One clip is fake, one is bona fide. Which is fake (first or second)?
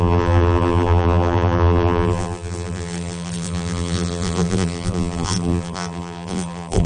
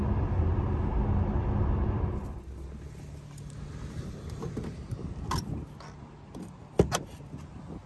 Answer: first